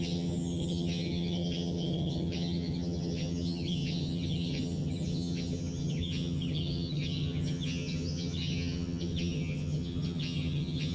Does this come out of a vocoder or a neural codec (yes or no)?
yes